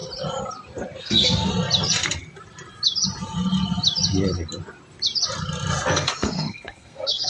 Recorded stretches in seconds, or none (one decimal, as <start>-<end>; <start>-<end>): 0.0-1.0; 1.5-5.9